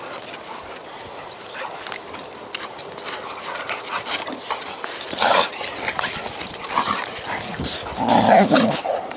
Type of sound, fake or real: real